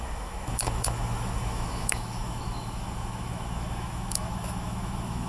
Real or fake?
fake